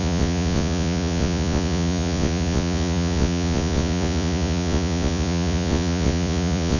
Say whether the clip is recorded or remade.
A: remade